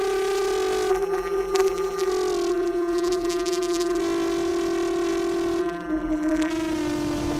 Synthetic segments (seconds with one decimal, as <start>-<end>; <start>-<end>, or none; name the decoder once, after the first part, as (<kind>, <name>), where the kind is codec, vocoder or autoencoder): 0.9-2.1 (vocoder, BigVGAN v2); 2.5-4.0; 5.6-6.5